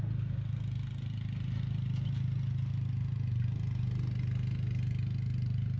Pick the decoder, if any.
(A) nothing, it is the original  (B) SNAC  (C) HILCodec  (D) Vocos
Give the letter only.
A